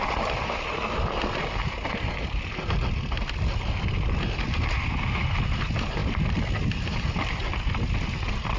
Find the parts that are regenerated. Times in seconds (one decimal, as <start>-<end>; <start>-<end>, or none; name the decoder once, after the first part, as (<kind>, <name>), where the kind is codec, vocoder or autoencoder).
none